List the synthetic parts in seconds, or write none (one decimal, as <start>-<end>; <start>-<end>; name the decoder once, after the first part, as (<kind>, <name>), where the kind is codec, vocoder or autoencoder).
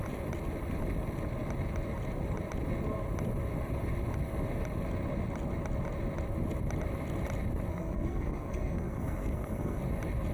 7.7-9.8 (codec, SNAC)